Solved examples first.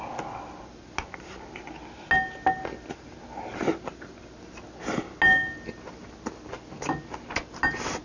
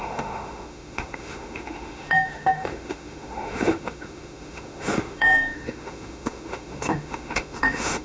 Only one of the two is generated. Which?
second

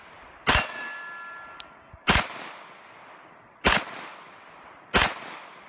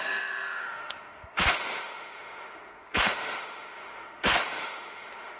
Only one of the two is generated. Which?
second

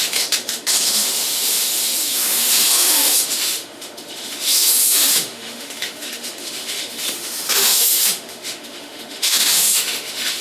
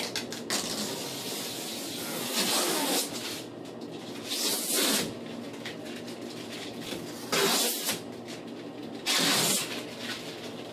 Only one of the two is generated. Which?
first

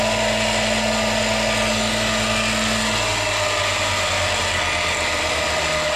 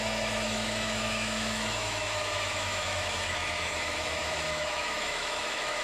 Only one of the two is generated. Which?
second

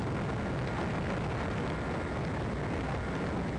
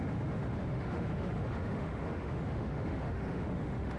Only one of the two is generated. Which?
second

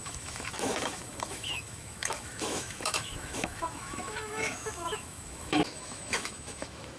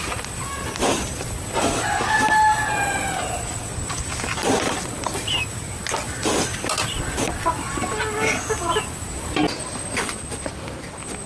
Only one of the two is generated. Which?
first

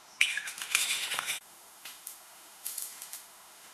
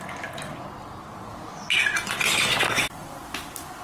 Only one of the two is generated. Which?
first